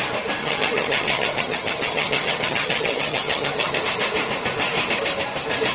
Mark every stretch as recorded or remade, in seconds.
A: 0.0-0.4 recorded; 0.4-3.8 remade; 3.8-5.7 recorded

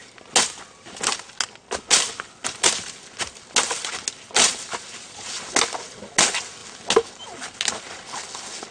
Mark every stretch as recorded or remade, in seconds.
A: 0.0-8.7 recorded